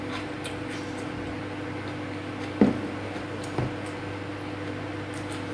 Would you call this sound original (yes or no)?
yes